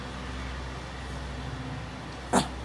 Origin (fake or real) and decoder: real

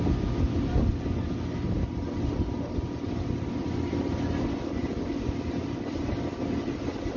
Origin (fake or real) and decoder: real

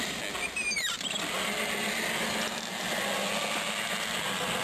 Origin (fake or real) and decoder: real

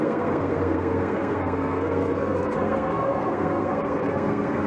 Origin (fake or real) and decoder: fake, codec, SNAC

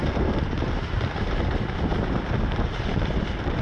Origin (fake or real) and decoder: fake, vocoder, BigVGAN v2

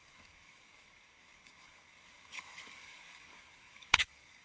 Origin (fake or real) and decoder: fake, codec, DAC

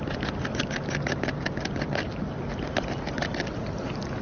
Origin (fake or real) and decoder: real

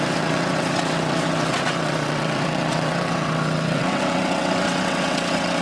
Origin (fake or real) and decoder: fake, vocoder, WaveNeXt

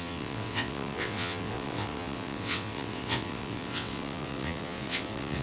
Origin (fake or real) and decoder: fake, vocoder, WaveNeXt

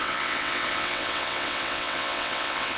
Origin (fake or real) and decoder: fake, vocoder, WaveNeXt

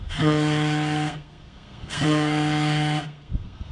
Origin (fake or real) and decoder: fake, codec, SNAC